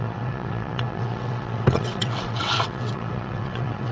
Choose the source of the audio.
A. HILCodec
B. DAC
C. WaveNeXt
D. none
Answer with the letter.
C